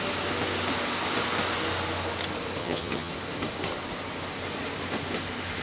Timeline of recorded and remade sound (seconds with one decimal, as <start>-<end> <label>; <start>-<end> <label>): 0.0-2.6 recorded; 2.6-3.1 remade; 3.1-5.6 recorded